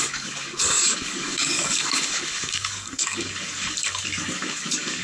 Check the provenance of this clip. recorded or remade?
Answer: remade